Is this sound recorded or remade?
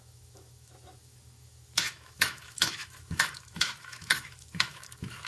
remade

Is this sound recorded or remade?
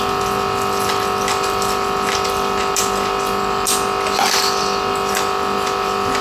recorded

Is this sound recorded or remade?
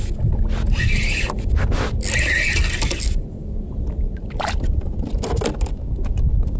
recorded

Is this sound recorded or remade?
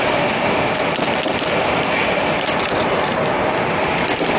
recorded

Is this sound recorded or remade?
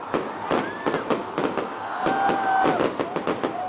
recorded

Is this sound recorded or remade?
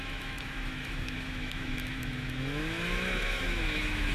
remade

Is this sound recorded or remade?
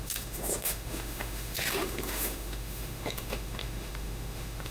remade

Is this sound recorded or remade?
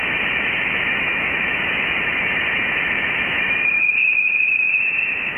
remade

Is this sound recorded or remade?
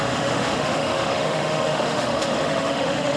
remade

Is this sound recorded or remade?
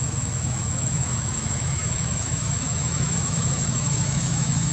remade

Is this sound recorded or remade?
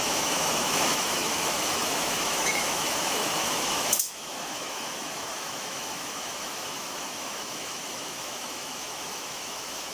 remade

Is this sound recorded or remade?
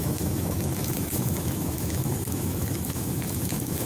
remade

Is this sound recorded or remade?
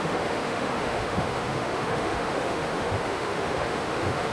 remade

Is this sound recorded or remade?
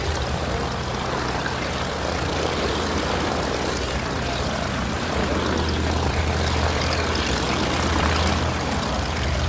recorded